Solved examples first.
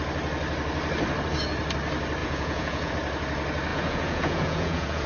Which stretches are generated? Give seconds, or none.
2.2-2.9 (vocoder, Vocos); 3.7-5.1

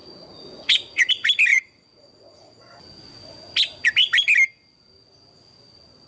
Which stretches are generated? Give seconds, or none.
0.0-1.1 (vocoder, Vocos); 1.5-2.6

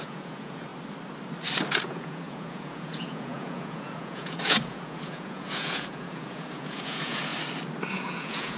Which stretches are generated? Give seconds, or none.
0.0-0.7 (vocoder, Vocos); 1.7-7.3; 7.9-8.6

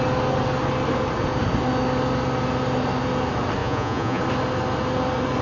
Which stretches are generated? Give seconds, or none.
3.6-4.2 (vocoder, Vocos)